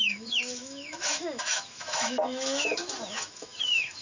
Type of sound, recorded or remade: remade